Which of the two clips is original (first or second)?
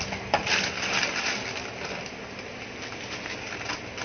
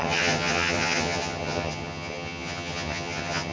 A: first